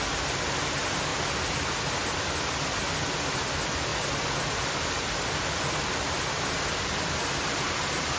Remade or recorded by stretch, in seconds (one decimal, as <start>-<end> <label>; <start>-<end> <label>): 0.0-8.2 recorded